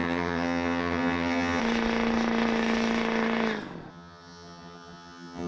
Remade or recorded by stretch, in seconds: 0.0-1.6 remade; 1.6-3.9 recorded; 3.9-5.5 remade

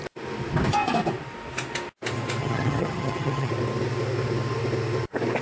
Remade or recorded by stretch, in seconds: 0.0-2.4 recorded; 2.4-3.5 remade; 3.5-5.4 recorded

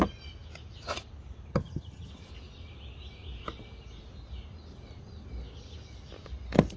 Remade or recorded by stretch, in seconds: 0.0-1.5 recorded; 1.5-2.1 remade; 2.1-6.8 recorded